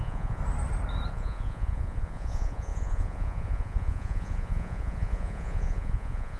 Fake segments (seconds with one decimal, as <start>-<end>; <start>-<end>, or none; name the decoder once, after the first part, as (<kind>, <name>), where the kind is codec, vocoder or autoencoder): 0.0-0.4 (vocoder, Vocos); 1.1-6.4